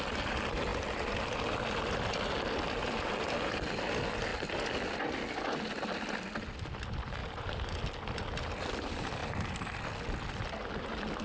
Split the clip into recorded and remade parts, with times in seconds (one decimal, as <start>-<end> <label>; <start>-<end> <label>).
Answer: 0.0-7.2 recorded; 7.2-7.7 remade; 7.7-11.2 recorded